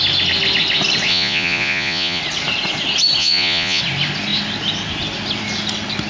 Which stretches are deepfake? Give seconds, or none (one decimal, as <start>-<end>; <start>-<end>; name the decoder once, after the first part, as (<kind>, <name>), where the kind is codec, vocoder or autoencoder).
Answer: 1.1-2.2 (vocoder, Vocos); 3.2-3.8